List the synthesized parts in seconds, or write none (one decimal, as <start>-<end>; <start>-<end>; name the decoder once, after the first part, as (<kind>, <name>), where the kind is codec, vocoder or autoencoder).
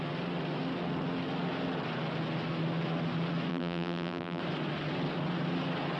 3.5-4.4 (vocoder, BigVGAN v2)